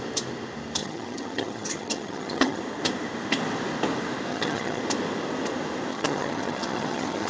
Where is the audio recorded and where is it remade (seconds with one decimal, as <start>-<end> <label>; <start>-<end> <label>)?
0.0-0.8 recorded; 0.8-2.6 remade; 2.6-4.3 recorded; 4.3-4.8 remade; 4.8-5.9 recorded; 5.9-7.3 remade